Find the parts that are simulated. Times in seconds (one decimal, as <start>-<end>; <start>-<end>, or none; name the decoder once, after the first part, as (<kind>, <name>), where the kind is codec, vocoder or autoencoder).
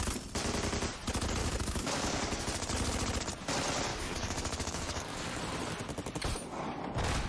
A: 1.4-2.4 (codec, DAC); 3.9-5.4